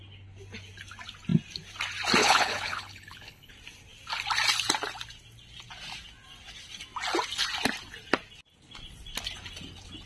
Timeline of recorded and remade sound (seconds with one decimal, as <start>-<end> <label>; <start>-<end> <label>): 0.0-2.2 recorded; 2.2-3.5 remade; 3.5-10.1 recorded